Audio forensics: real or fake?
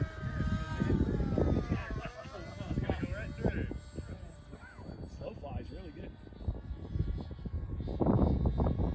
real